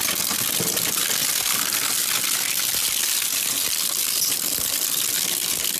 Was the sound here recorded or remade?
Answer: recorded